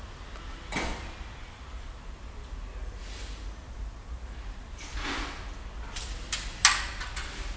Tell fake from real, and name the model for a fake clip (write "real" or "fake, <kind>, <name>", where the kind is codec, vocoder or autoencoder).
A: real